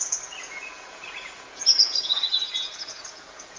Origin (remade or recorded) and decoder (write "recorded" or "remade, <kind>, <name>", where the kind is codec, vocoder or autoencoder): remade, vocoder, Vocos